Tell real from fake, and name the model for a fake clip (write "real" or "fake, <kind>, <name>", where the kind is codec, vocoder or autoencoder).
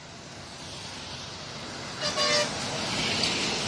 real